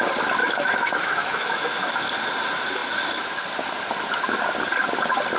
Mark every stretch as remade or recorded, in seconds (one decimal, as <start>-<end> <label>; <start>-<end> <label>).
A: 0.0-0.4 recorded; 0.4-2.0 remade; 2.0-5.4 recorded